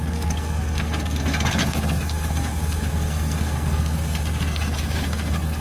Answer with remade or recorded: remade